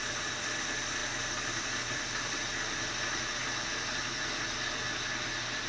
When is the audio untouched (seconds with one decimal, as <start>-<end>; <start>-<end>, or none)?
0.0-5.7